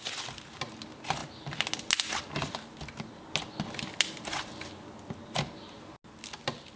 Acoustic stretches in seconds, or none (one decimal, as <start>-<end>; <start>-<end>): 0.0-6.8